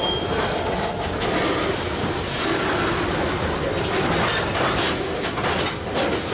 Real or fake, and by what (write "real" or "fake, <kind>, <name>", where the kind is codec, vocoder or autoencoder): real